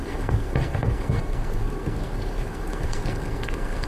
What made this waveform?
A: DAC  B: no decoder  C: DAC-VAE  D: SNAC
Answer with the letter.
D